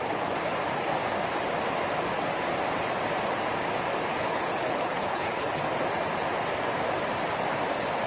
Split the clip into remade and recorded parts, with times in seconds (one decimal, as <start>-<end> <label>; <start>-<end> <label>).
0.0-4.1 recorded; 4.1-5.6 remade; 5.6-8.1 recorded